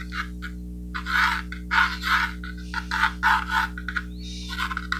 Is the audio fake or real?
real